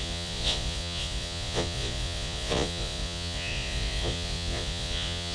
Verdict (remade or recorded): remade